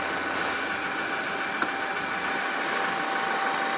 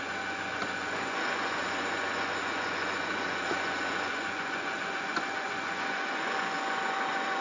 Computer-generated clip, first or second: second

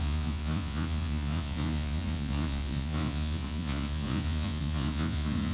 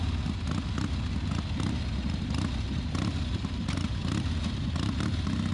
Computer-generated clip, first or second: first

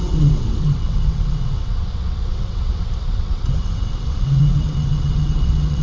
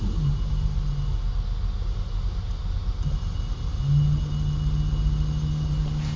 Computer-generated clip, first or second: first